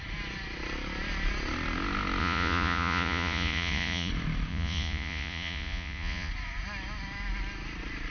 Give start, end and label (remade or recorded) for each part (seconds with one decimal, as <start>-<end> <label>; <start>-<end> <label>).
0.0-2.2 recorded; 2.2-4.1 remade; 4.1-4.5 recorded; 4.5-6.3 remade; 6.3-8.1 recorded